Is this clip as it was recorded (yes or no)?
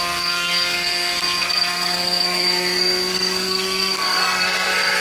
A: no